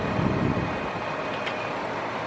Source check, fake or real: real